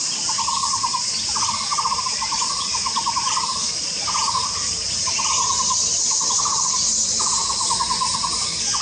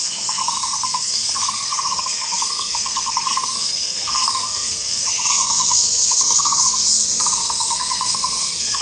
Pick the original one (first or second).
first